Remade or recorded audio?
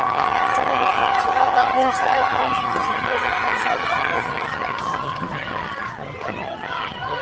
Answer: remade